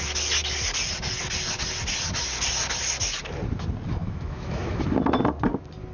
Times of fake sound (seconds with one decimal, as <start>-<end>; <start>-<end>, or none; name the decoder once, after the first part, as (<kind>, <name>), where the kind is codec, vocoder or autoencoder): 4.0-4.8 (autoencoder, DAC-VAE)